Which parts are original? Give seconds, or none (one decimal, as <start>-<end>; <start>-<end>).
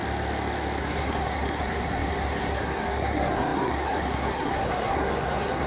0.0-0.8